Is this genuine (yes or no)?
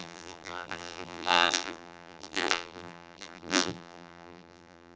no